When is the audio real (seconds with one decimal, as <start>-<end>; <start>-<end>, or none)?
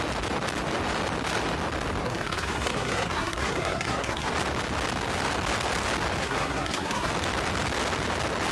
0.0-2.0; 4.3-6.2; 7.1-8.5